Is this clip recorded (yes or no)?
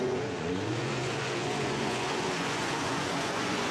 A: no